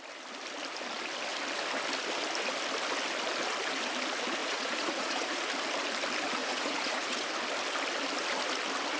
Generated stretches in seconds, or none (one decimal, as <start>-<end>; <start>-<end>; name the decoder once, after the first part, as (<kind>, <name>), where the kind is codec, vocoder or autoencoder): 4.4-5.4 (vocoder, Vocos); 6.4-7.3